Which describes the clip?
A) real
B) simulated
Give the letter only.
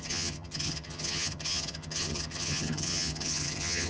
B